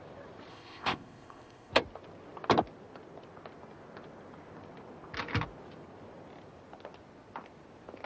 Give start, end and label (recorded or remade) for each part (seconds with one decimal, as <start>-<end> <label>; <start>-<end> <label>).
0.0-0.5 recorded; 0.5-1.7 remade; 1.7-8.1 recorded